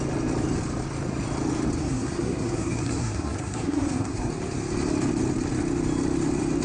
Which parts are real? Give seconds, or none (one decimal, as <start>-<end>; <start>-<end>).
0.0-1.8; 4.3-6.6